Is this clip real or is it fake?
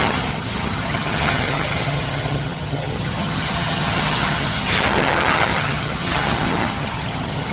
fake